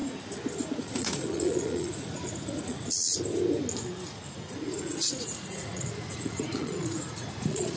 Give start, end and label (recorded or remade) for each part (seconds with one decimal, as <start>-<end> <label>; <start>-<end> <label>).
0.0-0.8 recorded; 0.8-3.1 remade; 3.1-4.3 recorded; 4.3-7.8 remade